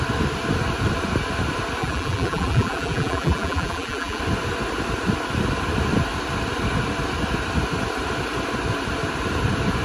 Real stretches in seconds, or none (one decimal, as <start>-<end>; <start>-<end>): 0.0-1.8; 4.2-9.8